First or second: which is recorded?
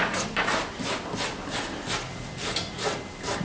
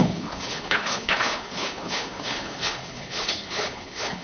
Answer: first